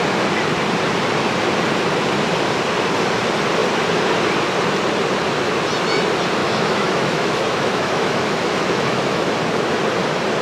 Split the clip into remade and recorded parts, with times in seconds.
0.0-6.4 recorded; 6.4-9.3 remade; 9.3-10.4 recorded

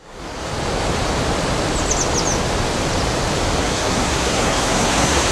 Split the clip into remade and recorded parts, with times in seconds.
0.0-0.5 remade; 0.5-3.6 recorded; 3.6-5.3 remade

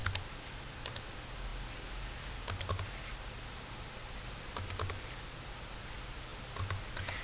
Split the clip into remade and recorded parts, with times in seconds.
0.0-7.2 recorded

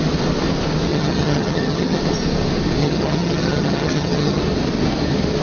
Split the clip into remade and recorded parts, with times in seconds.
0.0-0.9 recorded; 0.9-2.0 remade; 2.0-2.8 recorded; 2.8-4.4 remade; 4.4-5.4 recorded

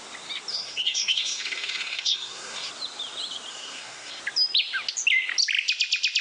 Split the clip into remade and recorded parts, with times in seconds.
0.0-0.5 recorded; 0.5-2.7 remade; 2.7-3.5 recorded; 3.5-4.2 remade; 4.2-6.2 recorded

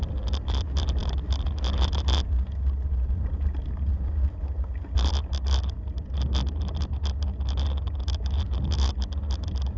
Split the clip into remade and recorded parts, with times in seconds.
0.0-9.8 recorded

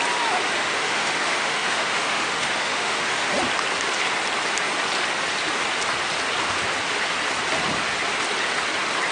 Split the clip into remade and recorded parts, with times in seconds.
0.0-0.6 recorded; 0.6-3.3 remade; 3.3-9.1 recorded

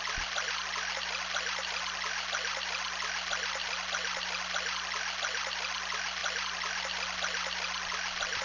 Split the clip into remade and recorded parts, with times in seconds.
0.0-8.4 recorded